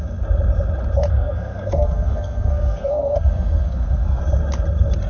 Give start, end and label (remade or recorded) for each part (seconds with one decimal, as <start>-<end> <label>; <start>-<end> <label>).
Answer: 0.0-1.1 recorded; 1.1-4.2 remade; 4.2-5.1 recorded